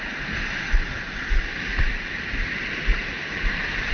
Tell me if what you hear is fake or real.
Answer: fake